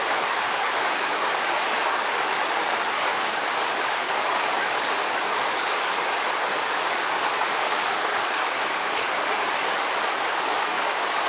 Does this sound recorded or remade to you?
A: remade